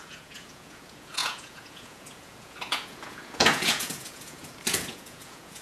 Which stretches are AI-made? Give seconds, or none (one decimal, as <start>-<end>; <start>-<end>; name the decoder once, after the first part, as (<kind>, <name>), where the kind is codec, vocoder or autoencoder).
0.0-5.6 (vocoder, Vocos)

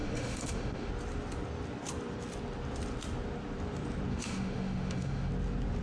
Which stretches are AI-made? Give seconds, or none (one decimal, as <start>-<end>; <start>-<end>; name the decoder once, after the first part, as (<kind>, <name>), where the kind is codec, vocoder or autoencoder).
0.0-0.9 (autoencoder, DAC-VAE); 4.1-5.3

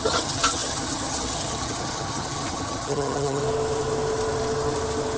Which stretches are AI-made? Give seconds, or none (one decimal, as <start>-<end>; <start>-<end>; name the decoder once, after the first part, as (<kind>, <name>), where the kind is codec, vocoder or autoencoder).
0.0-3.4 (vocoder, HiFi-GAN)

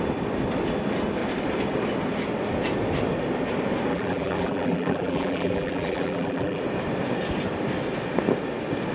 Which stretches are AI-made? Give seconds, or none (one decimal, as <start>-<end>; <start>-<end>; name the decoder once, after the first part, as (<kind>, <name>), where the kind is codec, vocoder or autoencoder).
3.9-6.6 (vocoder, BigVGAN v2)

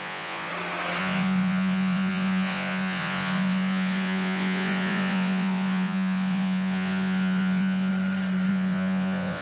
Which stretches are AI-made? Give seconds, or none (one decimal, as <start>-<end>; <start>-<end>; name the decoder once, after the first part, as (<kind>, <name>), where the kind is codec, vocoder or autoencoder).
0.0-0.5 (vocoder, Vocos); 1.0-7.9; 8.5-9.4